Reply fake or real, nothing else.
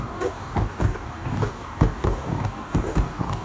fake